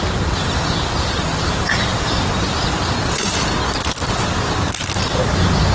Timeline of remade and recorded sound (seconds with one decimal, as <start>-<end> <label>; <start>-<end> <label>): 0.0-5.7 recorded